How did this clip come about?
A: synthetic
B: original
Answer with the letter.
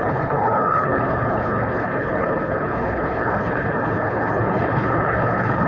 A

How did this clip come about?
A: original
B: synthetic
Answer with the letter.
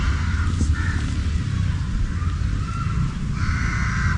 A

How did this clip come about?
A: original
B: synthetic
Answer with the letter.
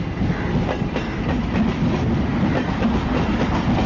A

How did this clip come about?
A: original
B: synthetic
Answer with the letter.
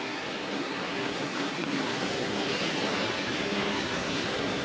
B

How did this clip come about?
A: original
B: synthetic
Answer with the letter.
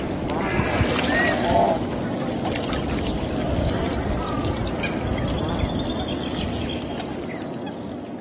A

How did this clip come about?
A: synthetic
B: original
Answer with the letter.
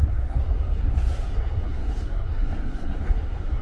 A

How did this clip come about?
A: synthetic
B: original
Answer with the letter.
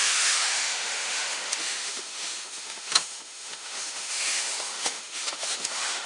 A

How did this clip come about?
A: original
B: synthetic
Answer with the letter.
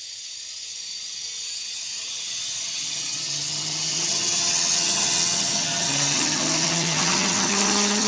B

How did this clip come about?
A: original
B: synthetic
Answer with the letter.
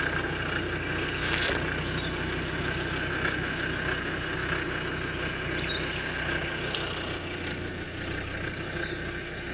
A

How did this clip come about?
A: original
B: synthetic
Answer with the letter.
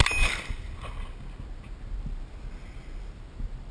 A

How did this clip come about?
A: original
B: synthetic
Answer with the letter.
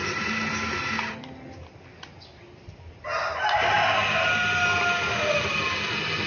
A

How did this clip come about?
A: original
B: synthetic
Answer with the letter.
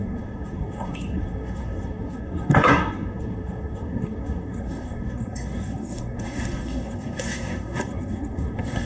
B